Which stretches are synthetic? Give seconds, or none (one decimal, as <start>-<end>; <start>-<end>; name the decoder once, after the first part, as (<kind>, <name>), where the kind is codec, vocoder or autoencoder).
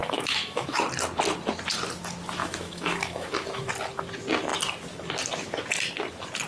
0.0-0.8 (autoencoder, DAC-VAE); 2.4-3.7